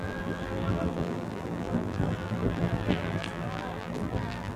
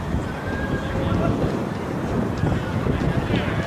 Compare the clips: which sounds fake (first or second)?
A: first